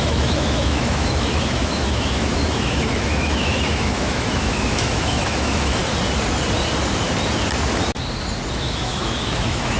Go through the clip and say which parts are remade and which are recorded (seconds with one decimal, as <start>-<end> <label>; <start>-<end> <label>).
0.0-5.8 remade; 5.8-8.5 recorded; 8.5-9.8 remade